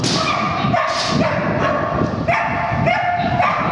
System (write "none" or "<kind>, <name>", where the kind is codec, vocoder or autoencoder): none